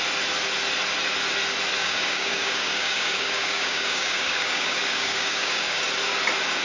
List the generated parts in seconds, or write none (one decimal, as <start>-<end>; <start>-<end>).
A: 1.8-5.8